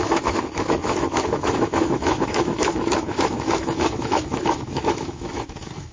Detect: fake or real fake